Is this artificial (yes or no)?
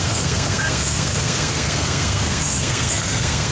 yes